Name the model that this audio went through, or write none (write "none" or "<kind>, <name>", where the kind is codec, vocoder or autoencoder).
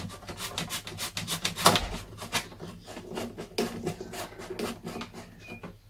none